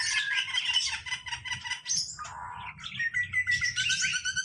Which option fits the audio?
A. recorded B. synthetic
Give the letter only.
A